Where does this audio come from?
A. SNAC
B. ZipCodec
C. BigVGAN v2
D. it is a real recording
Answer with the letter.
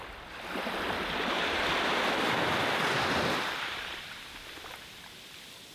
C